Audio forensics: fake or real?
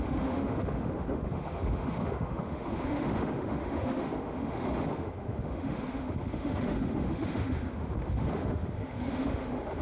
fake